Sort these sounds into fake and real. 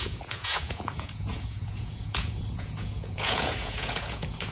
fake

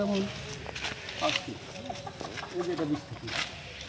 real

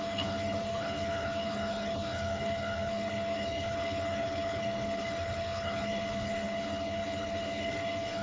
fake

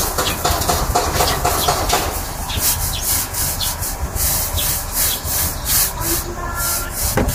real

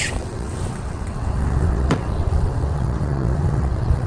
fake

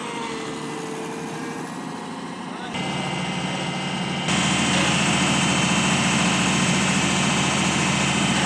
real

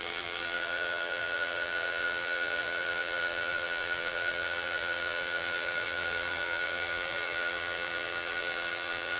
fake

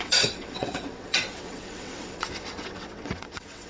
fake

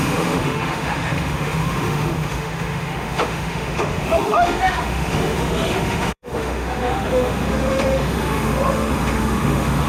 fake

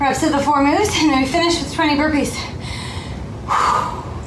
real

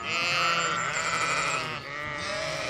real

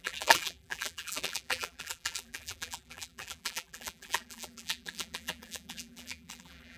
fake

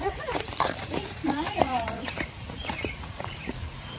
fake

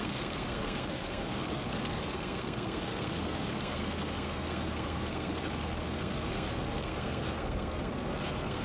fake